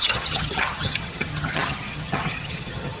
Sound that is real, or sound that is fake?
fake